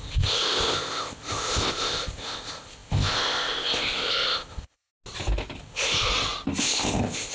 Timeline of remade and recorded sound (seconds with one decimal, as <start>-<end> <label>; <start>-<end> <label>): 0.0-4.9 remade; 4.9-5.6 recorded; 5.6-6.1 remade; 6.1-6.6 recorded; 6.6-7.3 remade